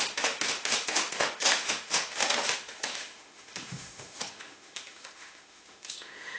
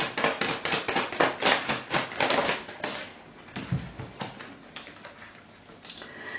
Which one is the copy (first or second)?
first